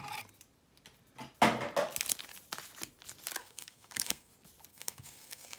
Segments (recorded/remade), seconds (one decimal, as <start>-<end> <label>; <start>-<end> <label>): 0.0-3.4 recorded; 3.4-4.3 remade; 4.3-4.7 recorded; 4.7-5.6 remade